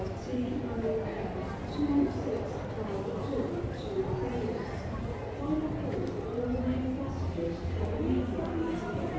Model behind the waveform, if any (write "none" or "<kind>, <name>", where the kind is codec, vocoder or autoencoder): none